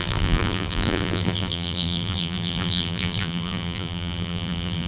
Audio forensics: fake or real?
fake